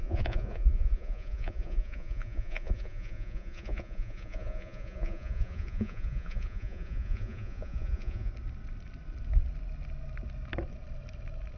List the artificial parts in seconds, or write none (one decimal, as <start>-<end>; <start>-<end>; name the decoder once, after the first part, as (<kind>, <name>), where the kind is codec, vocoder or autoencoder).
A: 0.0-8.3 (vocoder, Vocos)